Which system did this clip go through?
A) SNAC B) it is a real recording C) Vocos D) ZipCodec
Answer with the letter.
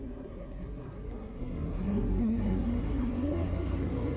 A